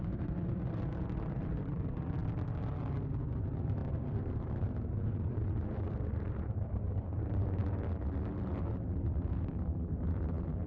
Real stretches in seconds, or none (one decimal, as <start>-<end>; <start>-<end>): 2.2-3.2; 7.6-9.0